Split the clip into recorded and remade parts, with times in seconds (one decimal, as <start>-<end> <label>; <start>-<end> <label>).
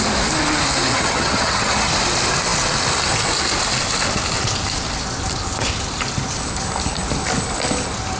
0.0-0.9 recorded; 0.9-1.9 remade; 1.9-8.2 recorded